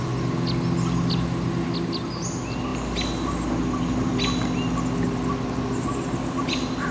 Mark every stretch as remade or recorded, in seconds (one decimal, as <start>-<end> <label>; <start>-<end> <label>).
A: 0.0-6.9 recorded